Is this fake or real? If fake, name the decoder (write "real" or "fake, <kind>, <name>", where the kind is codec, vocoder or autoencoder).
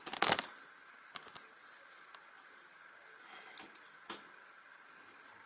real